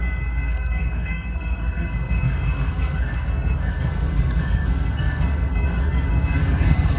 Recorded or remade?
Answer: remade